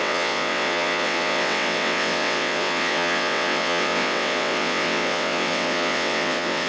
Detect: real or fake fake